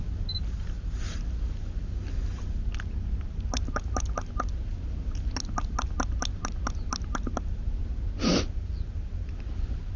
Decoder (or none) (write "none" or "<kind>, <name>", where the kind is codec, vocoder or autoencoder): none